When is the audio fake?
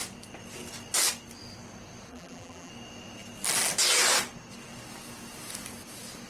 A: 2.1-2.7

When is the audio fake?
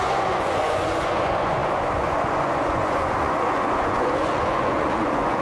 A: 0.0-5.4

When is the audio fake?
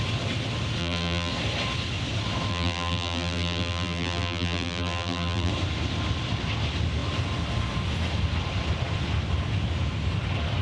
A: 0.8-1.3; 2.5-5.5